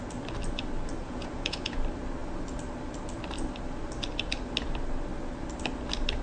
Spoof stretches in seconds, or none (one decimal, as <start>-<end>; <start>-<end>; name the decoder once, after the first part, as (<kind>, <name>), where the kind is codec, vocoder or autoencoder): 1.0-1.8 (vocoder, Vocos)